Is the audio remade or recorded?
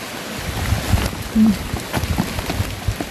recorded